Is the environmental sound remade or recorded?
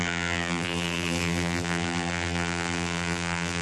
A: remade